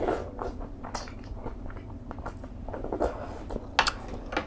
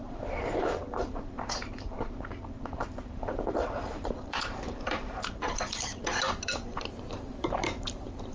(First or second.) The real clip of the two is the first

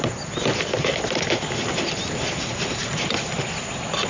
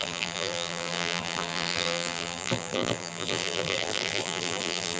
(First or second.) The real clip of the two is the first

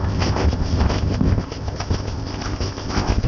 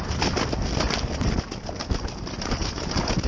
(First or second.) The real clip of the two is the second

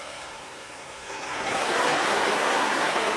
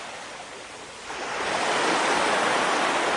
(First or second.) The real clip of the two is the second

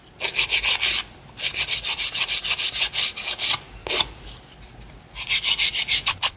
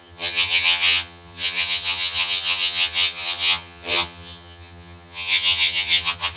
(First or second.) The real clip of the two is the first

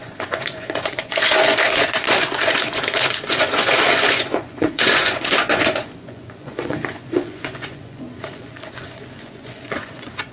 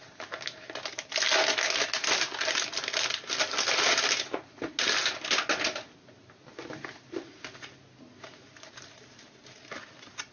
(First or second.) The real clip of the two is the second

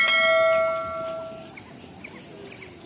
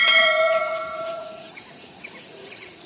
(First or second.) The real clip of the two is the first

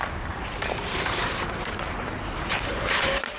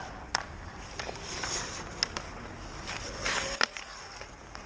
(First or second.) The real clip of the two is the second